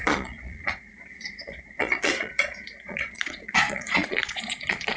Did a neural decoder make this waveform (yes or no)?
yes